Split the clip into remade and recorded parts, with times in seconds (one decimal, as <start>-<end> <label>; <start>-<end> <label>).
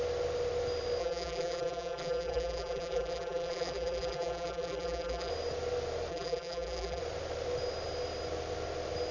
0.0-1.0 recorded; 1.0-5.3 remade; 5.3-6.1 recorded; 6.1-7.0 remade; 7.0-9.1 recorded